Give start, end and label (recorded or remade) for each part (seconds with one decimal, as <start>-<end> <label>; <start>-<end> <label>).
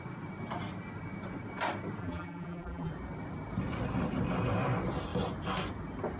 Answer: 0.0-2.0 recorded; 2.0-2.9 remade; 2.9-6.2 recorded